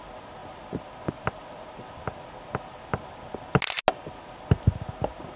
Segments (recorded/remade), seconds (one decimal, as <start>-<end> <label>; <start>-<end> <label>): 0.0-5.4 recorded